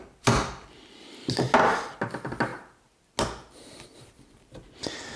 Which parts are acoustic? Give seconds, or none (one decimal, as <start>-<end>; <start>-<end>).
0.0-5.2